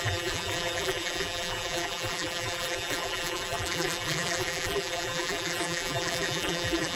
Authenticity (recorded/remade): remade